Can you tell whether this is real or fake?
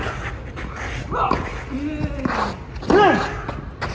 real